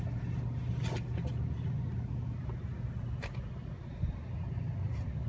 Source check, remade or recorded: recorded